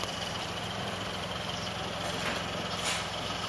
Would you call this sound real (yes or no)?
no